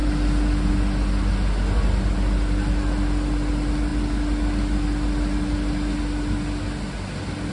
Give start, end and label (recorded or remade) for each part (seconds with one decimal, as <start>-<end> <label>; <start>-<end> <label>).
0.0-7.5 recorded